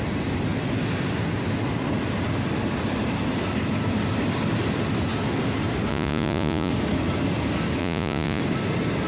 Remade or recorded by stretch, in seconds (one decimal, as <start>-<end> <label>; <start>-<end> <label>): 0.0-5.9 recorded; 5.9-6.7 remade; 6.7-7.8 recorded; 7.8-8.4 remade; 8.4-9.1 recorded